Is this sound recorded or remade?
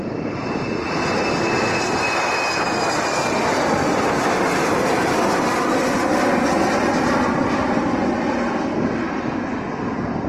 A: recorded